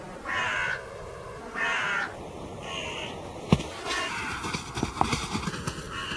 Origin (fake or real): real